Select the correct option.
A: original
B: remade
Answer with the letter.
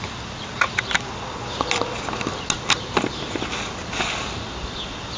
A